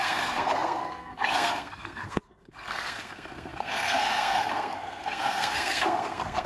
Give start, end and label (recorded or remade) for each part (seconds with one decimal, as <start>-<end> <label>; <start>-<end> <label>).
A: 0.0-6.5 remade